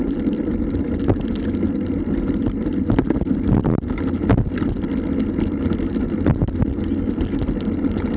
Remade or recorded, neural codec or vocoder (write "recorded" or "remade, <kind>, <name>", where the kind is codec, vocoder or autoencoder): recorded